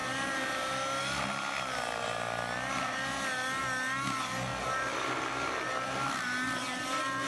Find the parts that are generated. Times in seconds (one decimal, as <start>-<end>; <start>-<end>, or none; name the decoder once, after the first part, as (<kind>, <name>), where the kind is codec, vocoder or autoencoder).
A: none